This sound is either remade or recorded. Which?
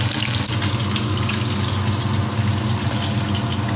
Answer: recorded